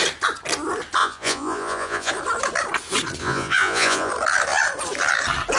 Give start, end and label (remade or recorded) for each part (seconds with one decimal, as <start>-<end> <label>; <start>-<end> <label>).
0.0-1.0 recorded; 1.0-2.1 remade; 2.1-3.2 recorded; 3.2-4.1 remade; 4.1-5.6 recorded